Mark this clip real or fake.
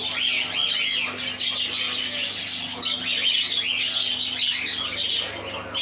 real